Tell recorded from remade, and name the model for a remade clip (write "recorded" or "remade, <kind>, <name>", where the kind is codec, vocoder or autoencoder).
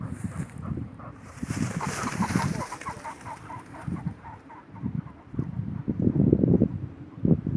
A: remade, vocoder, BigVGAN v2